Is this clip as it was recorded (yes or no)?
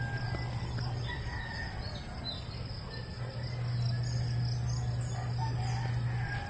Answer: yes